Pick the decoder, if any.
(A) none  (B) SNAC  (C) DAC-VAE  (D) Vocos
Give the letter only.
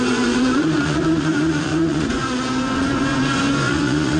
D